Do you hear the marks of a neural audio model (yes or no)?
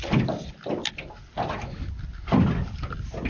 no